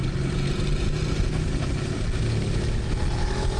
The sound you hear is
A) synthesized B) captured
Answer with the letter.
B